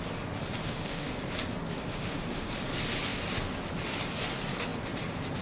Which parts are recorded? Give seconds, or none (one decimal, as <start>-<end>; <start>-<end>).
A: 0.0-0.6; 1.1-1.9; 2.5-5.4